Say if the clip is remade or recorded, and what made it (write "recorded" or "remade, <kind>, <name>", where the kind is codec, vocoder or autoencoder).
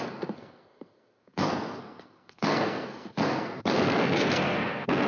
remade, codec, SNAC